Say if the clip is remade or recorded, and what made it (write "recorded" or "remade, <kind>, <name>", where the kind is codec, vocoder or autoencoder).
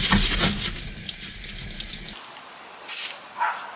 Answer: recorded